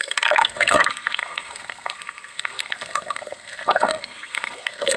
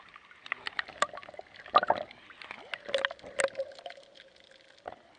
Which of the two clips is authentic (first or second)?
second